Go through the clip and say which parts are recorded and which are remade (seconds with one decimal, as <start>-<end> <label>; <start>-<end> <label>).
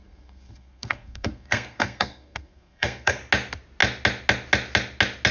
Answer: 0.0-3.2 remade; 3.2-5.3 recorded